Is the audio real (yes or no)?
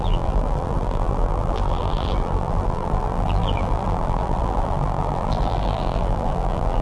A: no